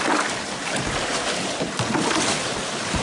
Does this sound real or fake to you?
real